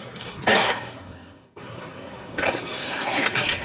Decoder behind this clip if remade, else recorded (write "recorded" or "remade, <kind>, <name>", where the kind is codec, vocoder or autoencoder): remade, codec, SNAC